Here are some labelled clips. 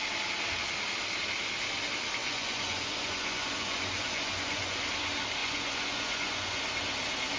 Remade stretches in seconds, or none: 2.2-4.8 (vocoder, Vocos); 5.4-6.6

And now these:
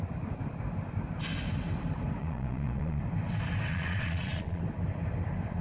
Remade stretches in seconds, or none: 2.2-3.0 (vocoder, Vocos); 3.7-4.6

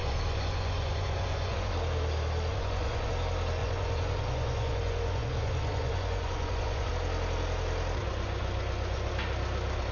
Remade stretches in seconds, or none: 0.0-1.7 (vocoder, Vocos); 2.5-3.1; 3.6-6.9; 8.0-9.1

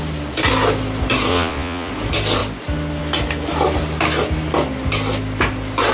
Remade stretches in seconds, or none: 1.3-1.9 (vocoder, Vocos)